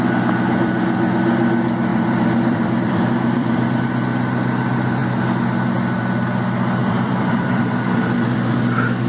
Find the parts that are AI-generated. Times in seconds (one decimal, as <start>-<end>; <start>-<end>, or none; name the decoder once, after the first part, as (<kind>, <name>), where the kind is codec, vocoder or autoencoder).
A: 1.9-3.8 (vocoder, BigVGAN v2); 6.8-7.8